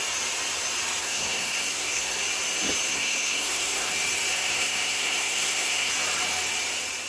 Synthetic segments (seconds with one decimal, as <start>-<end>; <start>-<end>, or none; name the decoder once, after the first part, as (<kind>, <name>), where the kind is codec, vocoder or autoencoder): 1.0-2.2 (codec, SNAC); 2.9-3.9; 4.3-5.9